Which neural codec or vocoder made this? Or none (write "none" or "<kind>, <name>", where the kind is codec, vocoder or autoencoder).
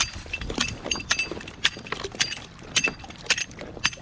none